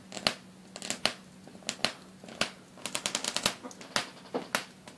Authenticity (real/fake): real